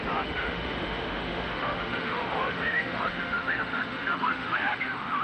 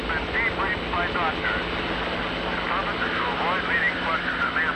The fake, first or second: first